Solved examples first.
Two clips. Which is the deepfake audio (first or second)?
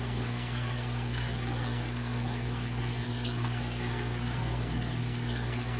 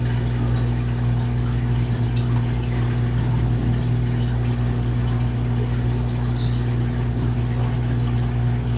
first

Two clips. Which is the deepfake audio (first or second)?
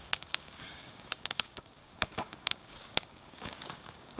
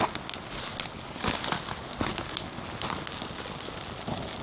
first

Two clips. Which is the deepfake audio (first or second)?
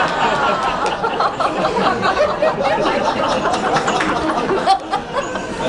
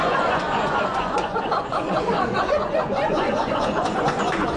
second